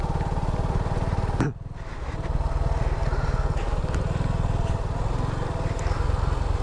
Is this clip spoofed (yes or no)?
no